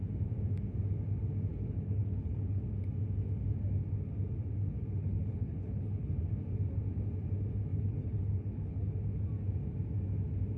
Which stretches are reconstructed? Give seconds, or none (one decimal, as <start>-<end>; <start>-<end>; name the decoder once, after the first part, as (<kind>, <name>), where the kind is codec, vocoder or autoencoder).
1.5-2.6 (codec, HILCodec); 5.0-6.1; 7.7-8.8